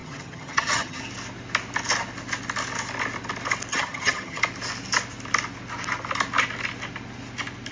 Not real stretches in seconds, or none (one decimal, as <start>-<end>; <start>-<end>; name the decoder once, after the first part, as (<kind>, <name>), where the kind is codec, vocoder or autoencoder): 0.0-1.0 (vocoder, HiFi-GAN); 3.7-4.4

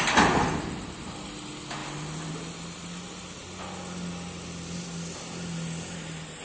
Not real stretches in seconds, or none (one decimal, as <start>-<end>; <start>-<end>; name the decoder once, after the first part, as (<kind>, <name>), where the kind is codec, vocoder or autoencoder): none